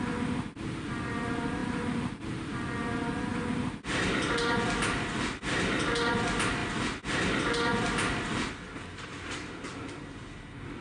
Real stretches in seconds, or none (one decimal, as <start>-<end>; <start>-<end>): 0.0-1.6; 2.2-10.8